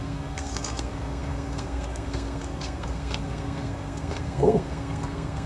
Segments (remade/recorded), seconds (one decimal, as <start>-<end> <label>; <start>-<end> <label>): 0.0-5.5 remade